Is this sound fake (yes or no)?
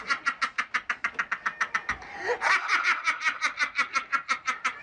no